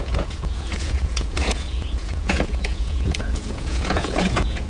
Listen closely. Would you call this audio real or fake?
fake